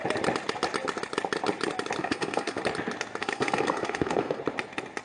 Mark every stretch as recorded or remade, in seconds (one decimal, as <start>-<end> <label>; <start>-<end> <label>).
0.0-2.0 recorded; 2.0-2.6 remade; 2.6-3.2 recorded; 3.2-4.4 remade; 4.4-5.0 recorded